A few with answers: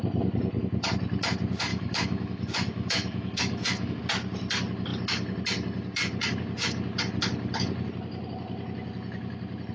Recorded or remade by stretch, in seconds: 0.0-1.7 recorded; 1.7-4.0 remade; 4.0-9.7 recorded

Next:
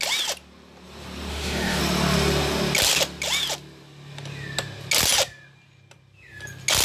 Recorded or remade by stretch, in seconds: 0.0-1.3 recorded; 1.3-1.8 remade; 1.8-6.8 recorded

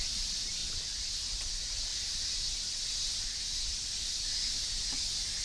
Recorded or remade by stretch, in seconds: 0.0-0.6 recorded; 0.6-1.1 remade; 1.1-1.9 recorded; 1.9-4.7 remade; 4.7-5.4 recorded

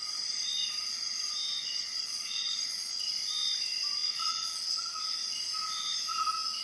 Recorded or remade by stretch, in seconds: 0.0-1.6 recorded; 1.6-2.9 remade; 2.9-4.0 recorded; 4.0-5.0 remade; 5.0-6.6 recorded

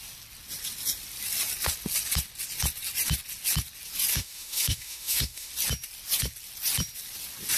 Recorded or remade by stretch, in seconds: 0.0-4.1 recorded; 4.1-5.5 remade; 5.5-7.6 recorded

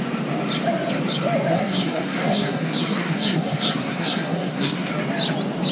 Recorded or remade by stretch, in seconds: 0.0-1.5 recorded; 1.5-4.9 remade; 4.9-5.7 recorded